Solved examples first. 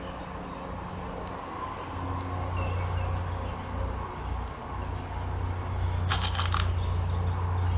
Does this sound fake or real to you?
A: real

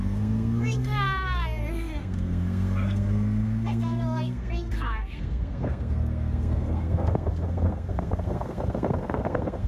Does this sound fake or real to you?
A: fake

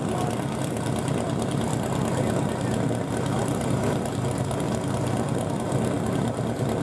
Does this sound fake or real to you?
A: fake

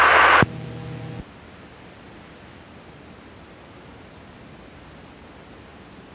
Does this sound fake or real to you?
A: real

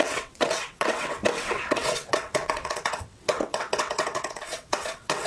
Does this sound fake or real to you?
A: fake